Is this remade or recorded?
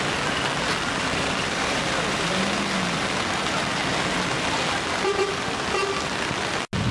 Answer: recorded